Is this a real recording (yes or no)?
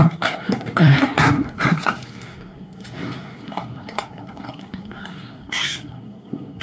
no